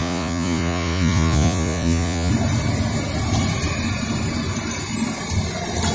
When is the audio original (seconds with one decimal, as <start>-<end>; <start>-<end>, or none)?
2.3-5.9